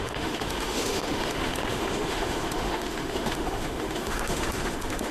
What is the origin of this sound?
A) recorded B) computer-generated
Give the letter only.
B